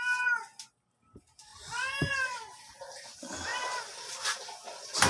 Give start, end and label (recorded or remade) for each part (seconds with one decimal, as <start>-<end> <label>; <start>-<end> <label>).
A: 0.0-1.5 recorded; 1.5-2.1 remade; 2.1-3.5 recorded; 3.5-4.1 remade; 4.1-5.1 recorded